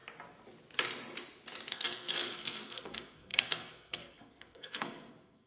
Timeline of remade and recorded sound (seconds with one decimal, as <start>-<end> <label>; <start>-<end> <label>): 0.0-1.7 recorded; 1.7-5.5 remade